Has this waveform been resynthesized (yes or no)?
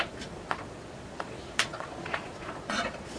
yes